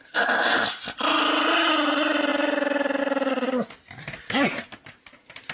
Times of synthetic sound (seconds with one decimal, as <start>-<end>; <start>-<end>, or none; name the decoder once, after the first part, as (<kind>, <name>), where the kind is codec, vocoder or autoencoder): none